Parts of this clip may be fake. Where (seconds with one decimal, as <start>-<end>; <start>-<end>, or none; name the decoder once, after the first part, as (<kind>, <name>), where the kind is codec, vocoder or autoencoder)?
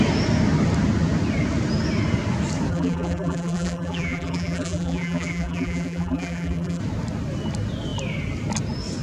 2.7-6.8 (vocoder, BigVGAN v2)